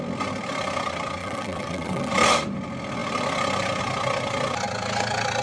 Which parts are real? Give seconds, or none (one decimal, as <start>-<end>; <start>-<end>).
0.0-1.2; 2.1-5.4

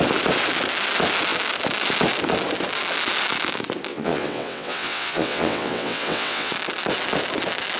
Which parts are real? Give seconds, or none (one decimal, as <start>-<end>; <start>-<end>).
0.0-3.9; 6.5-7.8

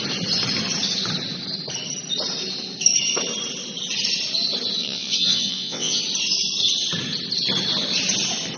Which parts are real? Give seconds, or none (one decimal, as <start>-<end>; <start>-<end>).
0.0-4.8; 6.0-8.6

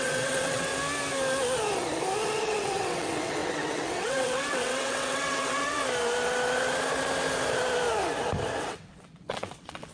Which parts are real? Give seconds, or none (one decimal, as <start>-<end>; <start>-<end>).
0.7-2.4; 5.8-8.6

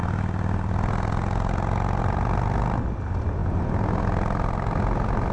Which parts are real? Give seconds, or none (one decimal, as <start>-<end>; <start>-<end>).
0.0-5.3